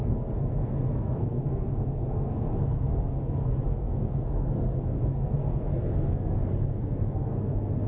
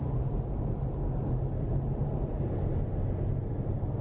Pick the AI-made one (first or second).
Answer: first